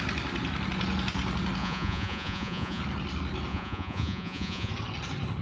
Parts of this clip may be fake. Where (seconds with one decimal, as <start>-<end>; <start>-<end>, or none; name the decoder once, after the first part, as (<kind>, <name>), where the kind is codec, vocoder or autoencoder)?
1.6-2.8 (vocoder, Vocos); 3.5-4.7